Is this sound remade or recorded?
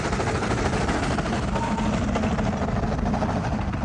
recorded